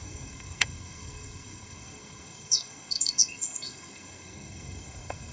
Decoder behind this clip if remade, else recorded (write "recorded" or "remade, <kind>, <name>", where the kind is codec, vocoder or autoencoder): remade, codec, SNAC